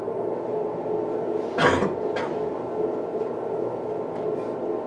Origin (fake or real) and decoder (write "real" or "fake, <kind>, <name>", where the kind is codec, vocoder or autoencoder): real